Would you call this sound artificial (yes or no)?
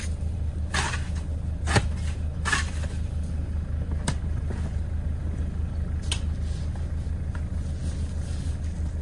no